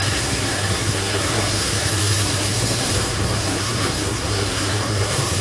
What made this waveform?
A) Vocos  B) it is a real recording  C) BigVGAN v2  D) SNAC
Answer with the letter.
D